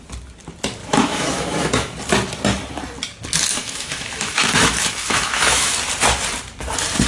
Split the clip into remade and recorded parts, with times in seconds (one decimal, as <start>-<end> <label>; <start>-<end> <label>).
0.0-0.8 recorded; 0.8-1.9 remade; 1.9-3.6 recorded; 3.6-5.7 remade; 5.7-7.1 recorded